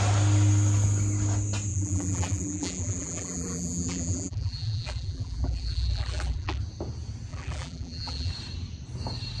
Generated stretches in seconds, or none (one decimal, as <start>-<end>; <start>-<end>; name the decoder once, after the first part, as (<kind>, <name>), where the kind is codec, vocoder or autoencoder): 1.7-6.6 (vocoder, BigVGAN v2); 7.3-8.3